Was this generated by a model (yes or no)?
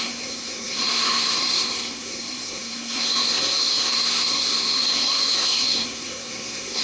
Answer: yes